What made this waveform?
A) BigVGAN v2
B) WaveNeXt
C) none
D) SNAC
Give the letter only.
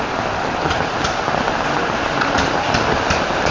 C